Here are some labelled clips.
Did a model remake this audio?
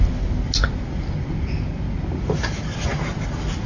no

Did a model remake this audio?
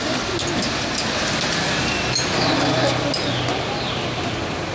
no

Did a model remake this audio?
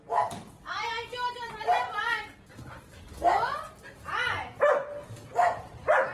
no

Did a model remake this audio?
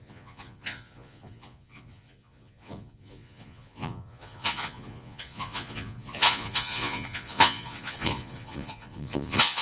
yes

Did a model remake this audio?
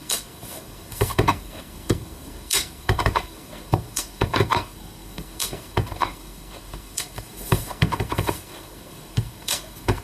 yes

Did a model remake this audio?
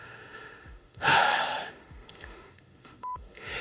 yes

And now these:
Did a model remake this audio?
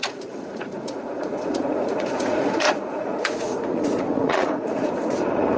yes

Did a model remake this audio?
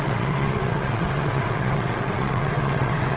yes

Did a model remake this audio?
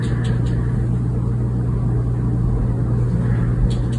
no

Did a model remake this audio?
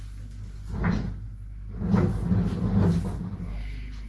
no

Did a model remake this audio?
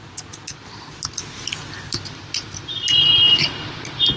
no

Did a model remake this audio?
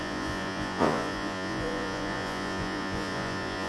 yes